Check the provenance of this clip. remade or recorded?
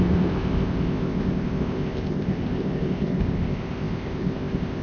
remade